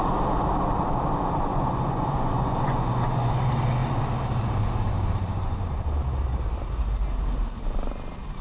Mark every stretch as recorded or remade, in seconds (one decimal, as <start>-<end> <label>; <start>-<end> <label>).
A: 0.0-1.5 recorded; 1.5-3.3 remade; 3.3-8.4 recorded